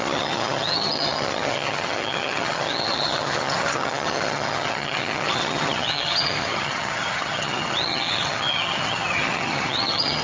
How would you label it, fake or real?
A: fake